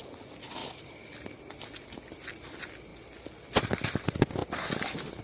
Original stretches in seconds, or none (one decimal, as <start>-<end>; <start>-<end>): 0.0-5.2